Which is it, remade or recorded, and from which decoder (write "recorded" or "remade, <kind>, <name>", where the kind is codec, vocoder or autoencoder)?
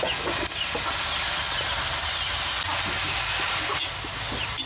recorded